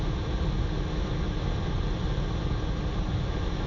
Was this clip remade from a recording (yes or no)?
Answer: no